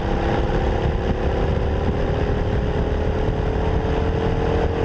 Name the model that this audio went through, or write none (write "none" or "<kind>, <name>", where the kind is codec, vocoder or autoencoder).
none